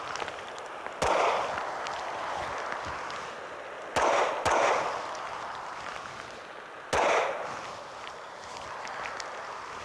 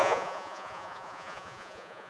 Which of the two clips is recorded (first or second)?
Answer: first